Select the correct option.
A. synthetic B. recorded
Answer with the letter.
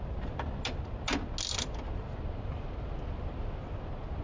B